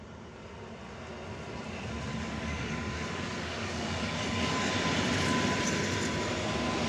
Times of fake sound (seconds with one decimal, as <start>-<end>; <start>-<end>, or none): 2.1-4.7